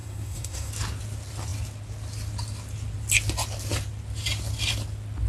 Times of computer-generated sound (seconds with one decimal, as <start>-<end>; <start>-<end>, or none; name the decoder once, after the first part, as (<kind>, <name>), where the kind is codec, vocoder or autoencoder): 0.0-0.7 (codec, SNAC)